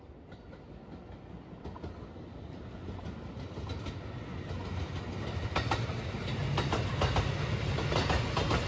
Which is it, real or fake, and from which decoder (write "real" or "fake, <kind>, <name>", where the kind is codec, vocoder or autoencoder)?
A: real